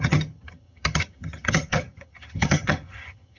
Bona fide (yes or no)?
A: no